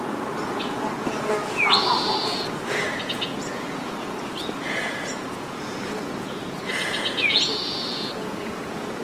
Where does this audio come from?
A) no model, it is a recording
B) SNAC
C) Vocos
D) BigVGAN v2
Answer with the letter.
C